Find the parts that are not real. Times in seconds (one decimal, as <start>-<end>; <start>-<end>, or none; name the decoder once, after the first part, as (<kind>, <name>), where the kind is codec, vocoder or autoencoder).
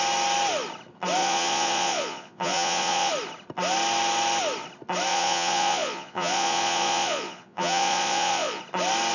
1.2-3.1 (vocoder, Vocos); 5.1-8.6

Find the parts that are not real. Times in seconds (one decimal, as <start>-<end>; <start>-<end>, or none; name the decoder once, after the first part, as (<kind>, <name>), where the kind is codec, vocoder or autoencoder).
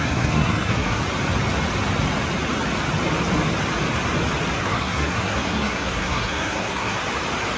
0.0-1.0 (codec, SNAC); 4.6-7.0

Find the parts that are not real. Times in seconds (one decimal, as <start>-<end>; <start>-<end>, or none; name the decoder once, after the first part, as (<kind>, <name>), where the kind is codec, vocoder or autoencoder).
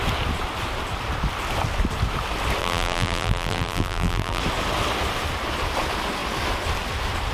2.6-4.4 (vocoder, BigVGAN v2)